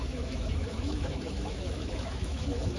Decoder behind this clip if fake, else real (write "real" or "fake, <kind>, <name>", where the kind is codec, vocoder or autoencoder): fake, autoencoder, DAC-VAE